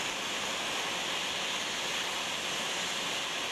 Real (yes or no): yes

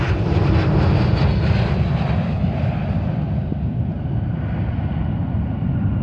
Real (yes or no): yes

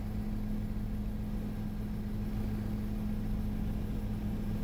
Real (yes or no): yes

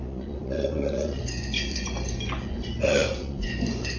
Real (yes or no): no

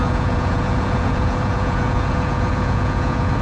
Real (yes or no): no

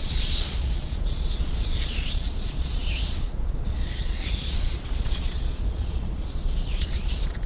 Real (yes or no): no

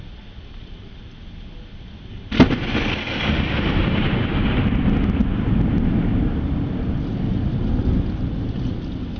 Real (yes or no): yes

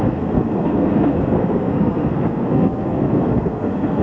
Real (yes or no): no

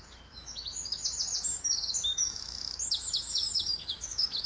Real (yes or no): no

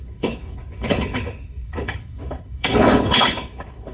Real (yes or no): no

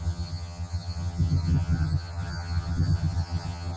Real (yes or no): no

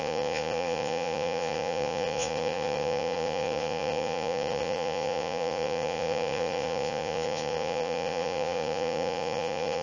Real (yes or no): no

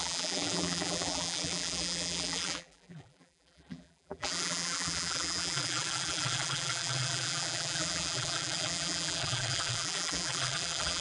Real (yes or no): no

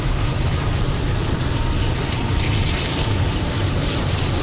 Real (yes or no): no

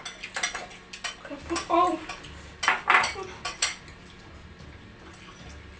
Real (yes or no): yes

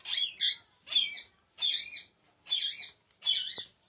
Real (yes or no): yes